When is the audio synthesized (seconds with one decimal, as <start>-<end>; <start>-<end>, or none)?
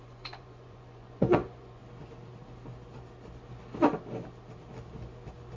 0.0-1.8